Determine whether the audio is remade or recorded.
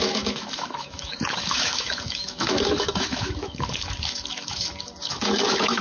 remade